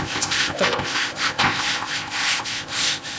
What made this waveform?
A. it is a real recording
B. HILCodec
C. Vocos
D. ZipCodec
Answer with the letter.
D